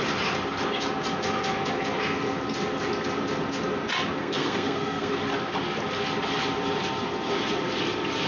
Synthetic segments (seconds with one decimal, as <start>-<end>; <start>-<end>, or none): 4.2-5.1

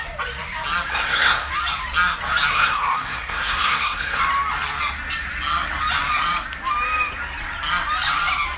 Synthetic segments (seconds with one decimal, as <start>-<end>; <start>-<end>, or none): 0.9-1.5; 2.5-4.2

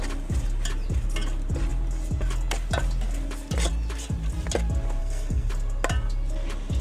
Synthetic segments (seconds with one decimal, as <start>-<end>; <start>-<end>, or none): 5.0-5.5

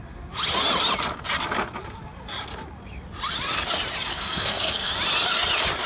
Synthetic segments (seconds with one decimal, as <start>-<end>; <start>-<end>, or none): 4.1-4.9